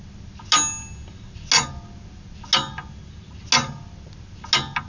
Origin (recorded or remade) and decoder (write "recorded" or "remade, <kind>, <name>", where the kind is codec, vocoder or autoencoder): recorded